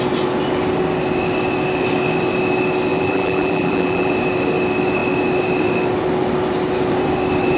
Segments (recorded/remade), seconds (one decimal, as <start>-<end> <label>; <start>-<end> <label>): 0.0-2.9 recorded; 2.9-4.1 remade; 4.1-7.6 recorded

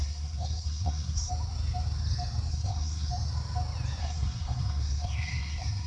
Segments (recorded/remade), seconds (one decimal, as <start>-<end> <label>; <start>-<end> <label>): 0.0-1.3 remade; 1.3-2.5 recorded; 2.5-3.1 remade; 3.1-4.0 recorded; 4.0-5.9 remade

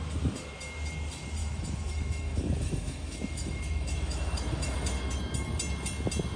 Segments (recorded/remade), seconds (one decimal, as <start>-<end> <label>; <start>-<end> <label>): 0.0-1.4 recorded; 1.4-5.2 remade; 5.2-6.4 recorded

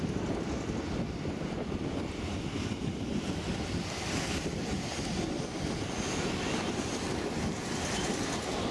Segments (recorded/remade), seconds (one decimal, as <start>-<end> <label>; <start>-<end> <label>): 0.0-8.7 recorded

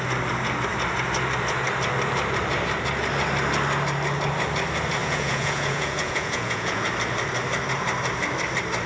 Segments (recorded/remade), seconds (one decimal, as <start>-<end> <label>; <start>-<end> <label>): 0.0-5.0 recorded; 5.0-6.9 remade; 6.9-8.9 recorded

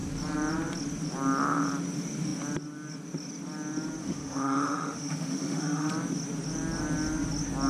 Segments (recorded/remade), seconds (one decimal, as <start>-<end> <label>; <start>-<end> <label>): 0.0-4.0 recorded; 4.0-5.9 remade; 5.9-7.7 recorded

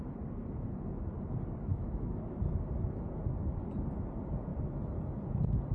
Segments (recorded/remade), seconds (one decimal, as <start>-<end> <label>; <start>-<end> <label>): 0.0-1.7 recorded; 1.7-2.4 remade; 2.4-5.7 recorded